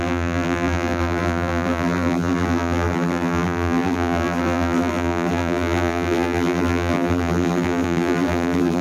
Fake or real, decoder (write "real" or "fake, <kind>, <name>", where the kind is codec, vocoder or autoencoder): fake, vocoder, BigVGAN v2